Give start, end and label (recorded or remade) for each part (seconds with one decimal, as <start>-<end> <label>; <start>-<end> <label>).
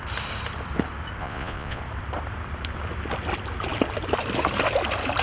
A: 0.0-1.2 recorded; 1.2-1.8 remade; 1.8-5.2 recorded